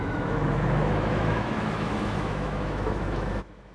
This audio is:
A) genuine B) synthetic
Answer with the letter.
B